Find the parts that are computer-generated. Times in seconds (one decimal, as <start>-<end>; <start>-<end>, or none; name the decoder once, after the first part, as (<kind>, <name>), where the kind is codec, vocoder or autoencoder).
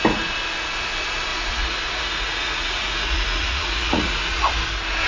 1.3-4.4 (vocoder, Vocos)